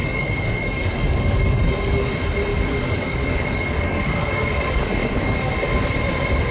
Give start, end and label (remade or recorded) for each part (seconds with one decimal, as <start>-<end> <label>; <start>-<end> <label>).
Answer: 0.0-2.1 remade; 2.1-2.5 recorded; 2.5-5.5 remade; 5.5-6.5 recorded